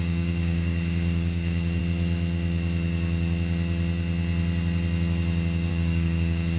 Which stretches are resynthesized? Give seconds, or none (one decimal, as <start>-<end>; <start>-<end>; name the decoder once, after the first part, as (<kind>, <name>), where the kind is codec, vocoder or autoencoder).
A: 0.0-1.8 (codec, DAC); 5.7-6.6